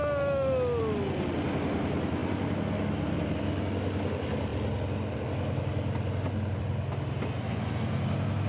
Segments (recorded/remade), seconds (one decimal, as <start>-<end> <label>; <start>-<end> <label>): 0.0-8.5 recorded